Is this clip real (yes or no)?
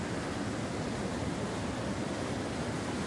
yes